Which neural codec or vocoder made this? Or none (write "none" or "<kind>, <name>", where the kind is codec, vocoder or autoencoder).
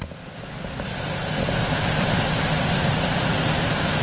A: none